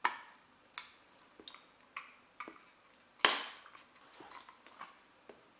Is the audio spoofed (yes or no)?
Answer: no